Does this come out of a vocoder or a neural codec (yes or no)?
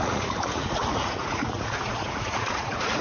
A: yes